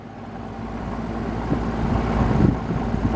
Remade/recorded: recorded